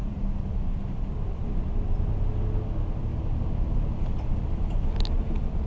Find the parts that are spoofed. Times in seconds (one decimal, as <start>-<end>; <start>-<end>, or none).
0.0-0.7; 3.1-5.0

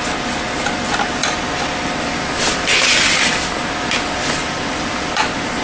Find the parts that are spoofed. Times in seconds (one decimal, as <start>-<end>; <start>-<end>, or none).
4.4-4.9

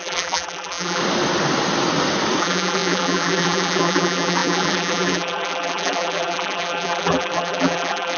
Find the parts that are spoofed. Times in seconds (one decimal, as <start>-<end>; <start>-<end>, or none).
0.0-1.0; 2.4-8.2

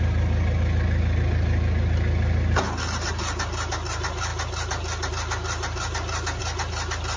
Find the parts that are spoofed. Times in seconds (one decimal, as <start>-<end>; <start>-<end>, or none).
none

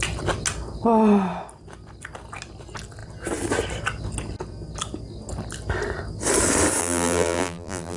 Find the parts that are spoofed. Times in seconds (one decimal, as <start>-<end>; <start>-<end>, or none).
6.8-8.0